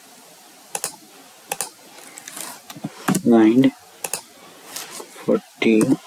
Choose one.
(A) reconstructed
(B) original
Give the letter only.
B